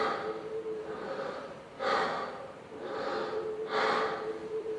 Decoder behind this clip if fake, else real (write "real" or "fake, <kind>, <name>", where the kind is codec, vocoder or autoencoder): fake, vocoder, BigVGAN v2